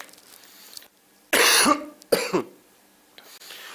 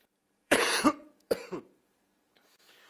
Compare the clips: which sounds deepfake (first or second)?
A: second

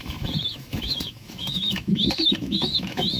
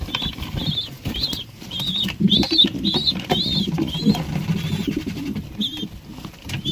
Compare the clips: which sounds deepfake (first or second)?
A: first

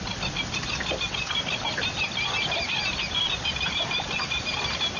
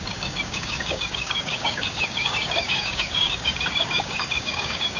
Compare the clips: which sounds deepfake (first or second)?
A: second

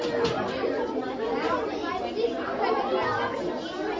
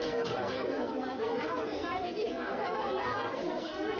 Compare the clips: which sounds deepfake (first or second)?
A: second